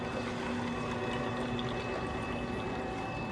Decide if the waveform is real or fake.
real